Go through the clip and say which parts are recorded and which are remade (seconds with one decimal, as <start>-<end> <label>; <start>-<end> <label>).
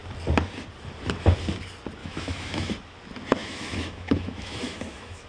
0.0-2.0 recorded; 2.0-2.7 remade; 2.7-3.4 recorded; 3.4-5.3 remade